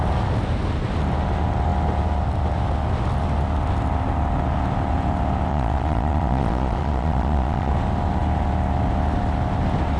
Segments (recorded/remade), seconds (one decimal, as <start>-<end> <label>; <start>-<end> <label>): 0.0-5.5 recorded; 5.5-7.7 remade; 7.7-10.0 recorded

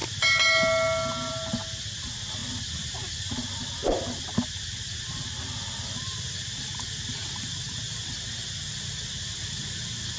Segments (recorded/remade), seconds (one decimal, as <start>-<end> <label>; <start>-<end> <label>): 0.0-10.2 recorded

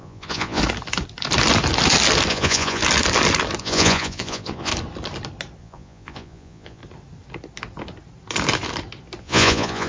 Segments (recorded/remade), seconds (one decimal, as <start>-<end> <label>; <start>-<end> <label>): 0.0-0.6 remade; 0.6-2.3 recorded; 2.3-2.8 remade; 2.8-3.6 recorded; 3.6-4.7 remade; 4.7-5.6 recorded; 5.6-6.8 remade; 6.8-9.2 recorded; 9.2-9.9 remade